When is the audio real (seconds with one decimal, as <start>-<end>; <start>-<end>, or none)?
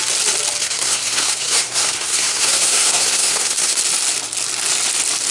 0.0-0.6; 3.8-5.3